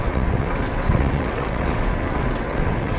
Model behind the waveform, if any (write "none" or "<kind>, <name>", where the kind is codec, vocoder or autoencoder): vocoder, WaveNeXt